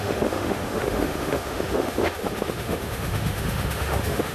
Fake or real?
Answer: fake